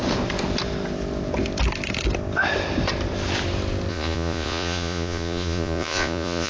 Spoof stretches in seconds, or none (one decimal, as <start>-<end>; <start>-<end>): 3.9-6.5

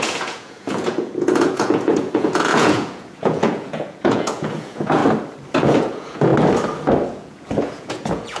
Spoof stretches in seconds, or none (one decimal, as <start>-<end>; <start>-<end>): 0.0-5.0; 5.6-6.3; 7.1-8.4

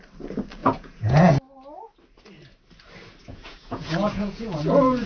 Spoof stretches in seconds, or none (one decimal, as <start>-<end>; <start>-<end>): 0.6-1.3; 3.2-5.1